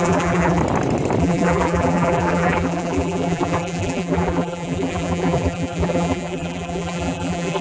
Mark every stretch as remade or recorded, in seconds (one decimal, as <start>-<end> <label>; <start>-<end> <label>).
0.0-0.6 remade; 0.6-1.2 recorded; 1.2-7.6 remade